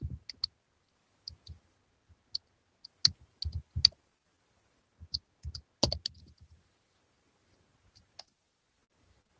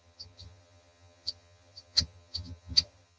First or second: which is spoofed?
second